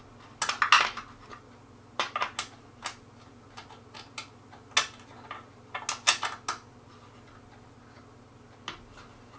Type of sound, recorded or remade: recorded